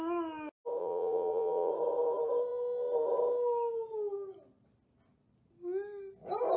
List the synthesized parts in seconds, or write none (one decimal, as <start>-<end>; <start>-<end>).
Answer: 0.8-1.7